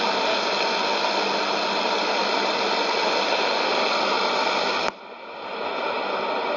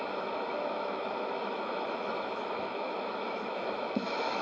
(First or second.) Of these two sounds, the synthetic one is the second